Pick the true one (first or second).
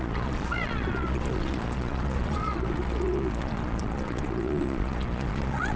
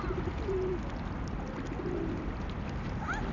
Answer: second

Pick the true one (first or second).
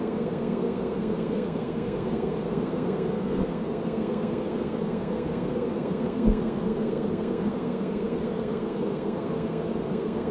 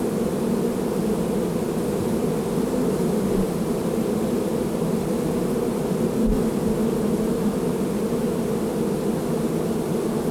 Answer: second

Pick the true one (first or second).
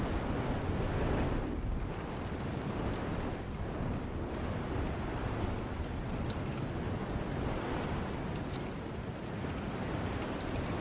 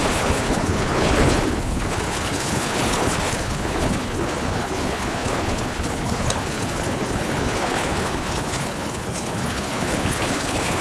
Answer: first